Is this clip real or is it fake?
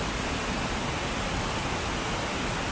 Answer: real